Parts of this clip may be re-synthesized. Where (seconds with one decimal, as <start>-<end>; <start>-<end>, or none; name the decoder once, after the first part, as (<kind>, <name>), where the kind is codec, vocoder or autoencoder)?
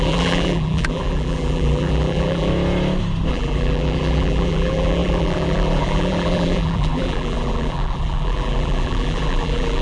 0.0-2.5 (vocoder, BigVGAN v2); 3.3-9.8